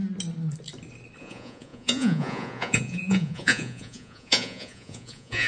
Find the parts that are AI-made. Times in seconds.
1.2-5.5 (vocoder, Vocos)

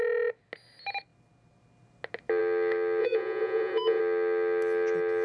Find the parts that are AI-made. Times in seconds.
3.0-4.0 (vocoder, Vocos)

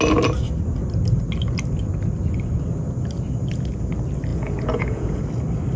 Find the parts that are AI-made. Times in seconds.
4.3-5.2 (vocoder, Vocos)